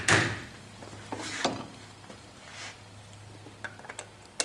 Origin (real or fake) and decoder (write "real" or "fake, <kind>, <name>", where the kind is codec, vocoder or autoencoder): real